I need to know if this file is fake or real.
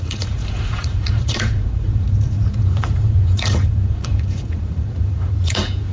fake